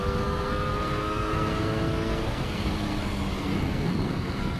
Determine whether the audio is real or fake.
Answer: fake